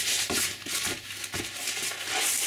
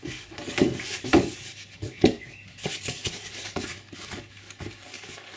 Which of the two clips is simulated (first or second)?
second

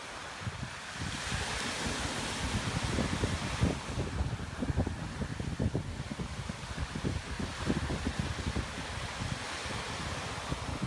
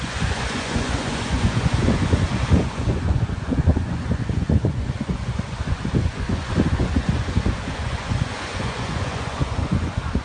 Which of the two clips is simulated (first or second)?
second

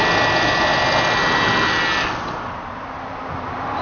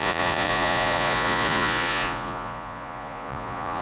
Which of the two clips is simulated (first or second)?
second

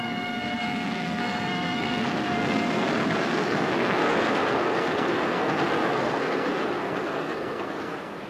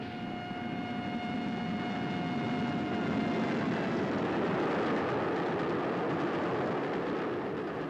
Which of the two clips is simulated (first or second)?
first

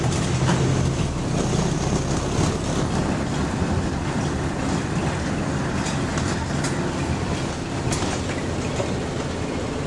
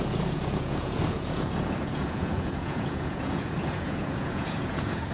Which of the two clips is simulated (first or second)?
second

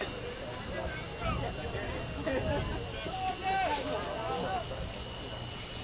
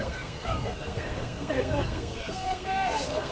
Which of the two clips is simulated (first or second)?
second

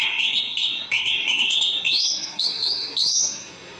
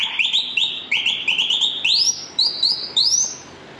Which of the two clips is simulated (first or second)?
first